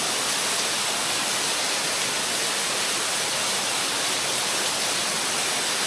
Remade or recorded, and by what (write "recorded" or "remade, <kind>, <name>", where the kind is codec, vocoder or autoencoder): recorded